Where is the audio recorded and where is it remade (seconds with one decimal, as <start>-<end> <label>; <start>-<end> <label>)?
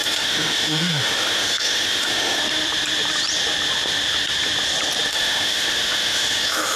0.0-2.4 remade; 2.4-5.1 recorded; 5.1-6.8 remade